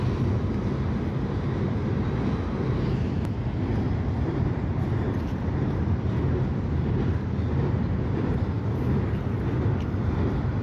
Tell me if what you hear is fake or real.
real